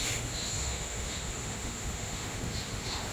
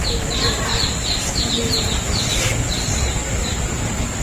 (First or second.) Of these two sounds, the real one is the second